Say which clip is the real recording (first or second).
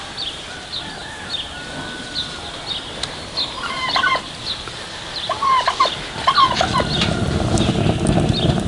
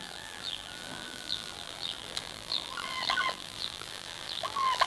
first